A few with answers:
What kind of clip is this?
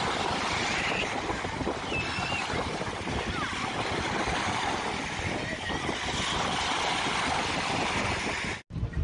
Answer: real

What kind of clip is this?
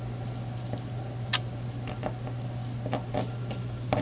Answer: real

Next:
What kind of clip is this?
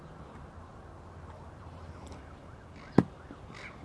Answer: real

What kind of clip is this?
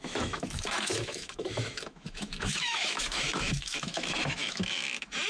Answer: fake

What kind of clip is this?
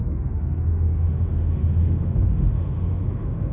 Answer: fake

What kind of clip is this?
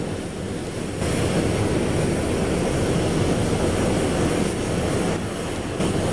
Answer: real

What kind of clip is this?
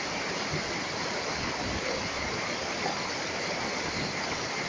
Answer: real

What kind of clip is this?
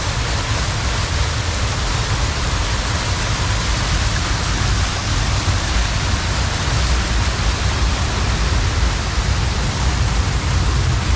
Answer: real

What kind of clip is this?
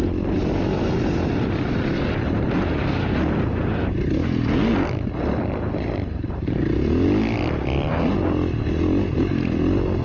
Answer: real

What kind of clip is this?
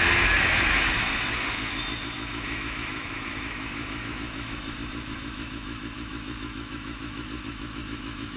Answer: fake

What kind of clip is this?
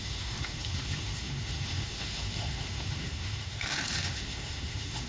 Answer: fake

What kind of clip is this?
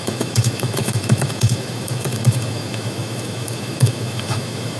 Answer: fake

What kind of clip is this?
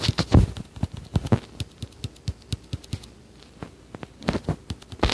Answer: real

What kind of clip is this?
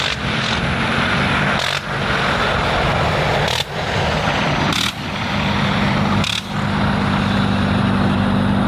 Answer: real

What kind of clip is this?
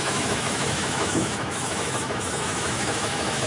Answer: fake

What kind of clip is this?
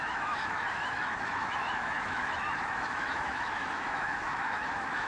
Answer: fake